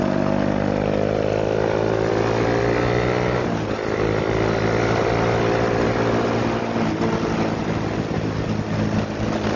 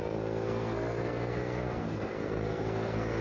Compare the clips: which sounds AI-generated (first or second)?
second